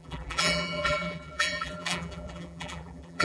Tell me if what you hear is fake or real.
fake